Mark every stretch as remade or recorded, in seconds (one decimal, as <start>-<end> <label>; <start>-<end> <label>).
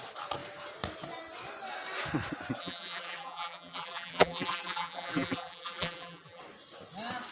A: 0.0-2.6 recorded; 2.6-6.4 remade; 6.4-7.3 recorded